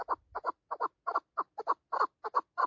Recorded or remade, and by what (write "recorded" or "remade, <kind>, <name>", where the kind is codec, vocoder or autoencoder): recorded